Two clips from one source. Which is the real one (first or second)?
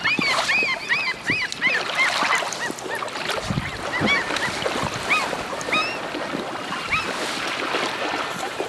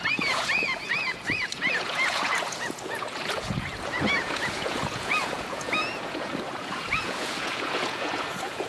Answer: first